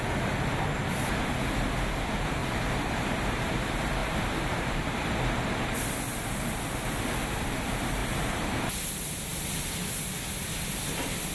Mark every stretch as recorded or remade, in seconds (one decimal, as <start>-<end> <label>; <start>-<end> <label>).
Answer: 0.0-2.4 recorded; 2.4-3.5 remade; 3.5-8.0 recorded; 8.0-8.6 remade; 8.6-11.3 recorded